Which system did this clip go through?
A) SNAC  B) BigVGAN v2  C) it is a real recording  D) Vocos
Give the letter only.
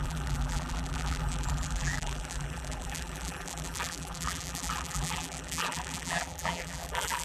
B